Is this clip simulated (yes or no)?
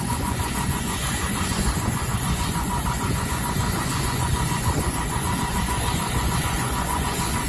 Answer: yes